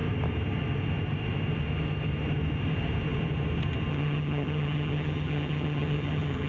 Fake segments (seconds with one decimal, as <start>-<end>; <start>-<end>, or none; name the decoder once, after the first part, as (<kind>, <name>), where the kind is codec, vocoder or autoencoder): 3.9-6.5 (vocoder, HiFi-GAN)